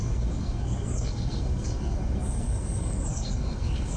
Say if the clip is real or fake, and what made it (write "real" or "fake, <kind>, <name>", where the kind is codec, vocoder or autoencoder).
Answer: fake, codec, SNAC